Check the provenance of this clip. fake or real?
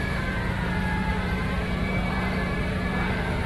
fake